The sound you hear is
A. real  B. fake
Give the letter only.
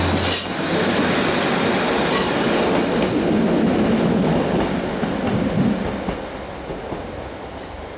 A